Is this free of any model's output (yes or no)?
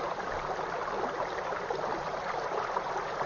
yes